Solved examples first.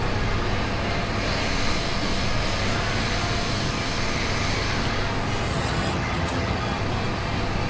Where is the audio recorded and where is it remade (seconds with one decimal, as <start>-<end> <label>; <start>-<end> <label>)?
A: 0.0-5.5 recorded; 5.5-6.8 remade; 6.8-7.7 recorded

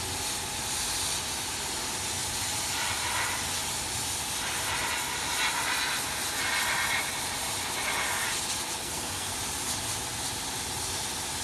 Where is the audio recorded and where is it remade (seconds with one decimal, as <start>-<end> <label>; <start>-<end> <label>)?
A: 0.0-8.8 recorded; 8.8-9.3 remade; 9.3-11.4 recorded

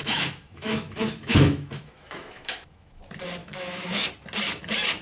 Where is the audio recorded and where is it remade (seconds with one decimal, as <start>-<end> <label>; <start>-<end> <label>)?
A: 0.0-3.0 remade; 3.0-3.4 recorded; 3.4-4.1 remade; 4.1-5.0 recorded

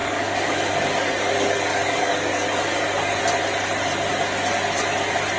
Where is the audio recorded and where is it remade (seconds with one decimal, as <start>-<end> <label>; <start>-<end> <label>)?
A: 0.0-3.2 remade; 3.2-5.4 recorded

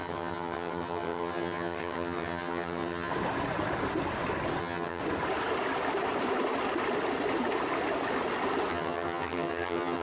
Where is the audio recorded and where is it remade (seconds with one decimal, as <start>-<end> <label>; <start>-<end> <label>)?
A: 0.0-3.1 remade; 3.1-4.6 recorded; 4.6-5.0 remade; 5.0-8.7 recorded; 8.7-10.0 remade

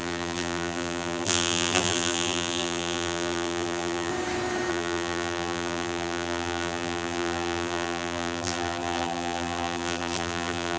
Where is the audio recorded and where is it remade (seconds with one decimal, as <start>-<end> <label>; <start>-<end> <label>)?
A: 0.0-4.1 remade; 4.1-4.7 recorded; 4.7-10.8 remade

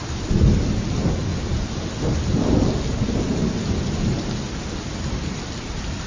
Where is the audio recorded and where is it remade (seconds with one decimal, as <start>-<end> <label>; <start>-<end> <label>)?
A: 0.0-6.1 recorded

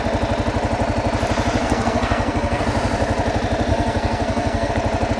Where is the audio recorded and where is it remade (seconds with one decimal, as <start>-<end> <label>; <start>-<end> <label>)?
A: 0.0-1.6 recorded; 1.6-2.6 remade; 2.6-3.7 recorded; 3.7-4.7 remade; 4.7-5.2 recorded